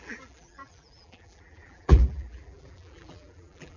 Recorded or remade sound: remade